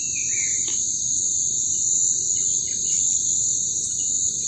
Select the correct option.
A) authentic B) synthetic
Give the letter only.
A